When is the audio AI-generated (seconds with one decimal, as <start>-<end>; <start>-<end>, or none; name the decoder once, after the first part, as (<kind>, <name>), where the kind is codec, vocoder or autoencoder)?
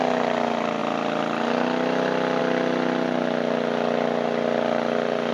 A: none